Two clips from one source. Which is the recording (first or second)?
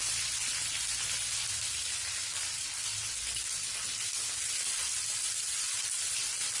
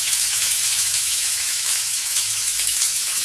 first